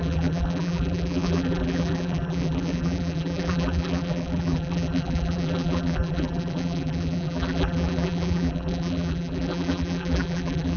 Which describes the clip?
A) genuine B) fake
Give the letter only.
B